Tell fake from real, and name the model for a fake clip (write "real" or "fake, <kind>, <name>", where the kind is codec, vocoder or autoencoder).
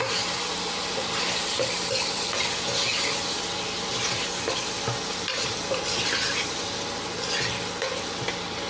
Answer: real